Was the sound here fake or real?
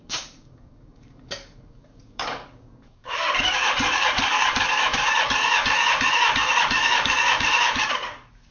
fake